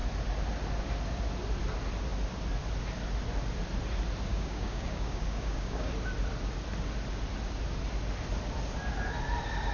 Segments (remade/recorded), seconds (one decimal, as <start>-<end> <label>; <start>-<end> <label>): 0.0-4.3 recorded; 4.3-5.9 remade; 5.9-9.7 recorded